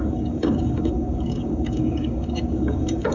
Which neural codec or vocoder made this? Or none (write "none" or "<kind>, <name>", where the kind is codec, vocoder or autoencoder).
codec, DAC